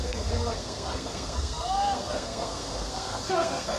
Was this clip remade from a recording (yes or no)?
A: yes